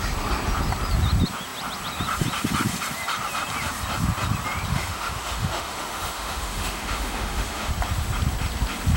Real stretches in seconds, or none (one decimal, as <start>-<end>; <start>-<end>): 0.0-4.7; 7.7-9.0